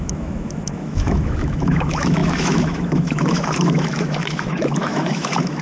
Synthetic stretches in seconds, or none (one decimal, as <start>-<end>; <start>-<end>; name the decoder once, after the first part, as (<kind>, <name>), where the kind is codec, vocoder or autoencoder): 0.0-5.6 (autoencoder, DAC-VAE)